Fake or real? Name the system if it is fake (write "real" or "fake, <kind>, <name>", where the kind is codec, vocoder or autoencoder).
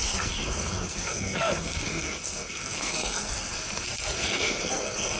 fake, codec, SNAC